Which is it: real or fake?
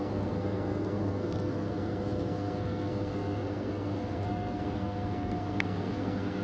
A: fake